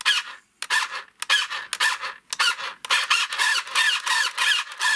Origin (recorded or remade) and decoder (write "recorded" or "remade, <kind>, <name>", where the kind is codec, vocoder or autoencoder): recorded